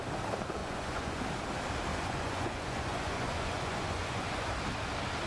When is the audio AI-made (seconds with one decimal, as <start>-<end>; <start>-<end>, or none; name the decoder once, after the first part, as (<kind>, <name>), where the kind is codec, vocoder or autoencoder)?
0.6-1.2 (vocoder, Vocos); 1.9-4.5